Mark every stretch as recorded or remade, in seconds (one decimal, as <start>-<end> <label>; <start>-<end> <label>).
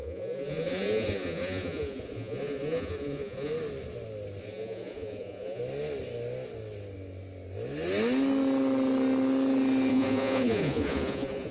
0.0-3.5 remade; 3.5-4.4 recorded; 4.4-5.6 remade; 5.6-9.9 recorded; 9.9-11.5 remade